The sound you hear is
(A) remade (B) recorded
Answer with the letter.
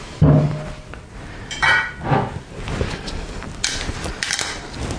B